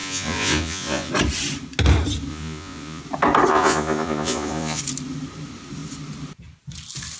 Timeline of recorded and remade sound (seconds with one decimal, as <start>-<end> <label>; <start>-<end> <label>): 0.0-1.1 remade; 1.1-2.3 recorded; 2.3-3.0 remade; 3.0-3.5 recorded; 3.5-4.8 remade; 4.8-7.2 recorded